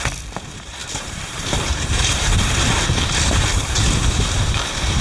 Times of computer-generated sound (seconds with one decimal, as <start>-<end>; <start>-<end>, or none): 0.8-2.1